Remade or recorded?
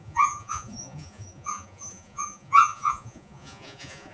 remade